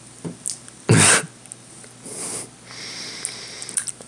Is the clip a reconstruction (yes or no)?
no